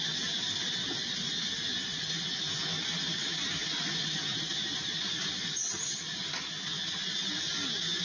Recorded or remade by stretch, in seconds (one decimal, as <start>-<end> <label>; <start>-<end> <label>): 0.0-8.0 recorded